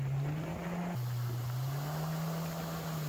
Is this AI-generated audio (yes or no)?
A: no